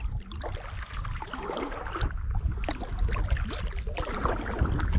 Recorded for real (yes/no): yes